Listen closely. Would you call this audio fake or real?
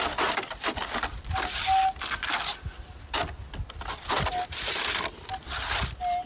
real